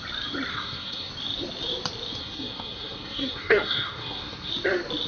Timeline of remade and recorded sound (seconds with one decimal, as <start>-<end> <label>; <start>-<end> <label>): 0.0-0.5 recorded; 0.5-1.1 remade; 1.1-2.2 recorded; 2.2-4.5 remade; 4.5-5.1 recorded